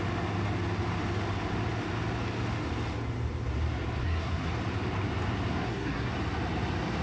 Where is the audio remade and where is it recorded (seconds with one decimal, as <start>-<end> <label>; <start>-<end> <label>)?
0.0-4.0 recorded; 4.0-4.5 remade; 4.5-5.5 recorded; 5.5-6.1 remade; 6.1-7.0 recorded